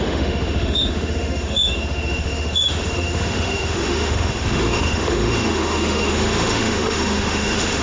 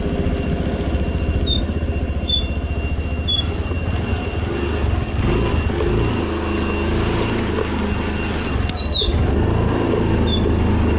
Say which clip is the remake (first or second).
first